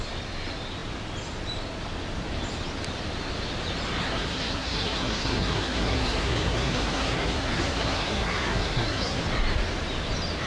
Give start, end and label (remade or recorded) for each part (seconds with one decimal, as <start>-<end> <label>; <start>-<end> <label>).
0.0-4.0 recorded; 4.0-9.2 remade; 9.2-10.5 recorded